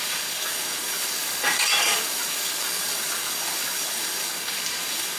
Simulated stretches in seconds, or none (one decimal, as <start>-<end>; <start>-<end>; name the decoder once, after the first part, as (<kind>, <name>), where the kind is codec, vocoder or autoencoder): 0.0-5.2 (codec, DAC)